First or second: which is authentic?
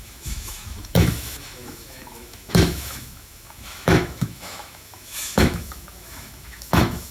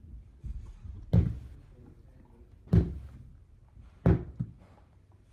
second